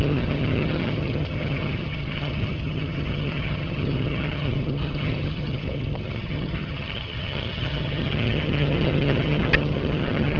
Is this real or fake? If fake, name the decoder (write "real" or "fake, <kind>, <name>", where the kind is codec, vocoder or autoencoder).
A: fake, vocoder, HiFi-GAN